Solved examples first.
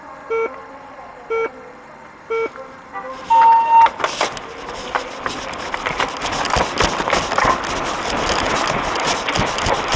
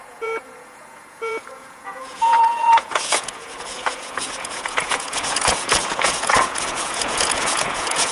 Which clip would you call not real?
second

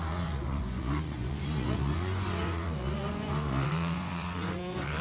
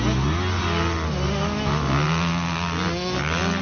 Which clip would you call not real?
first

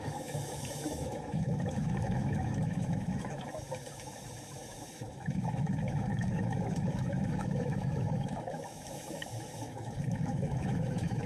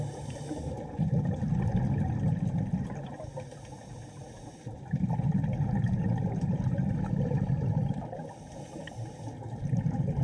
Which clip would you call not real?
first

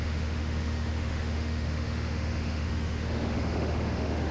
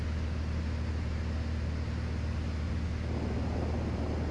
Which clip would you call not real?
first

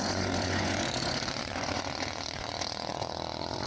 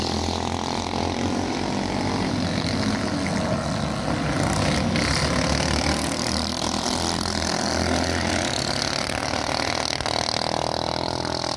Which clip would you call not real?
first